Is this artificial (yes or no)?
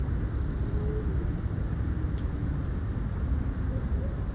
no